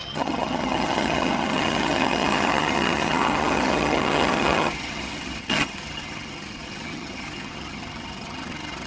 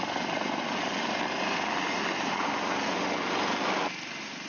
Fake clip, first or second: first